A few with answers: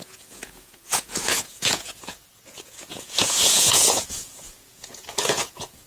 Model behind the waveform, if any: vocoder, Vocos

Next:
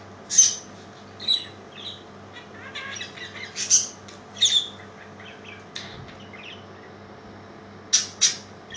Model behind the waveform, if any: none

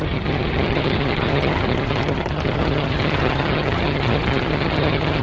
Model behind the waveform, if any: vocoder, HiFi-GAN